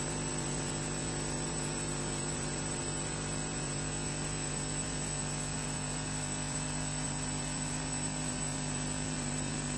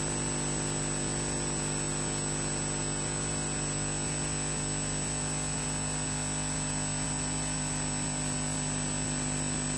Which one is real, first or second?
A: second